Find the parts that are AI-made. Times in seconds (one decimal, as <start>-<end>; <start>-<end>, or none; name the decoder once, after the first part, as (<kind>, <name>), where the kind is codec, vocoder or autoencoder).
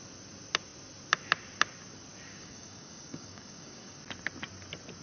2.3-4.0 (codec, DAC)